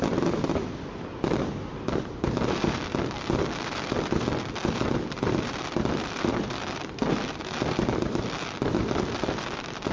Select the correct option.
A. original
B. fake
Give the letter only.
B